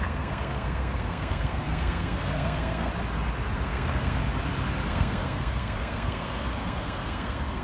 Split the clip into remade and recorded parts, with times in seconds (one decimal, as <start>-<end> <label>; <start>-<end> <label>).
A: 0.0-2.9 remade; 2.9-3.6 recorded; 3.6-4.2 remade; 4.2-4.9 recorded; 4.9-7.6 remade